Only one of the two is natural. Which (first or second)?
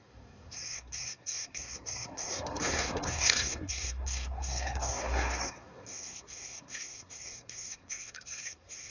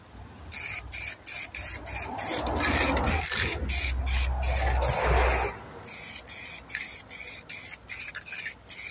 second